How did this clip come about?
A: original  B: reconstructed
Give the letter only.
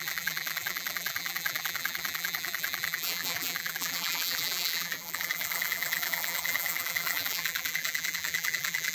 B